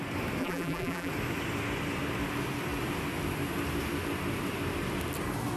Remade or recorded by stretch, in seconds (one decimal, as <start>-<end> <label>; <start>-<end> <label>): 0.0-0.4 recorded; 0.4-1.1 remade; 1.1-5.6 recorded